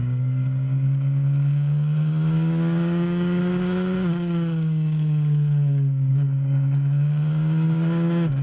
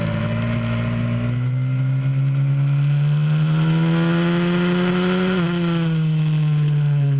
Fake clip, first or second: first